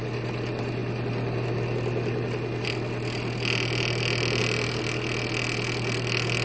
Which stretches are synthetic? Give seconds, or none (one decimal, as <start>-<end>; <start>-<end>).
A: none